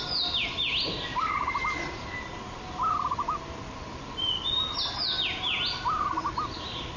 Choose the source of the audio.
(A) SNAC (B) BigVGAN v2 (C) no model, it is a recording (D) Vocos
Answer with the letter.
C